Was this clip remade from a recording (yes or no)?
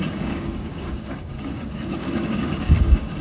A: yes